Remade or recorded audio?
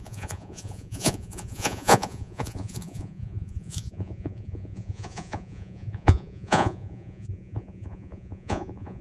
remade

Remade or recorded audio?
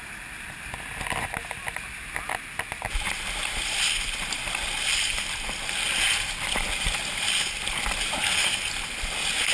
recorded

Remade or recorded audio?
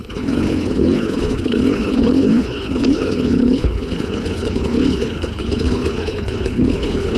remade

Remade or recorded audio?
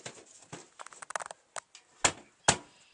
recorded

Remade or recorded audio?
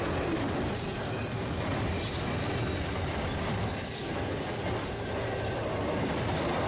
recorded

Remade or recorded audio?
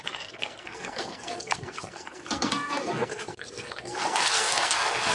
remade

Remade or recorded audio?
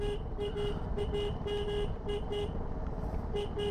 recorded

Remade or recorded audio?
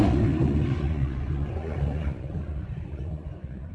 remade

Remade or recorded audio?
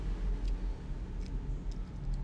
recorded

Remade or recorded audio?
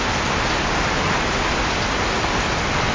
recorded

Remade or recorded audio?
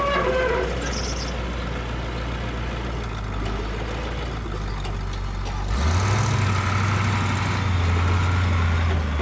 recorded